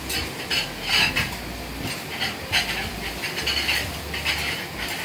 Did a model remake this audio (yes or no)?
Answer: no